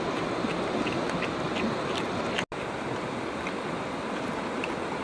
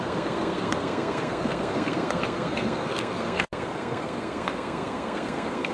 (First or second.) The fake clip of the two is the second